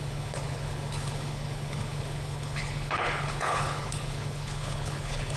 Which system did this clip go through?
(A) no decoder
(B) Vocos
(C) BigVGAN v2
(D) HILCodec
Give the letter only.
D